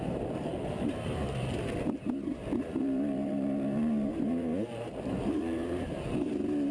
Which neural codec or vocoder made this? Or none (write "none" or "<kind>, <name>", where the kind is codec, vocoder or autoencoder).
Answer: vocoder, BigVGAN v2